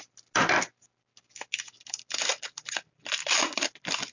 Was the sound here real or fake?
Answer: real